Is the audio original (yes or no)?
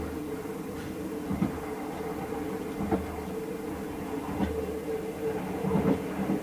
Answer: no